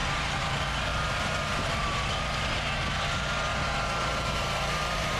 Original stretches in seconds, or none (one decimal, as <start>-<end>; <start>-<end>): 0.5-0.9; 2.2-3.5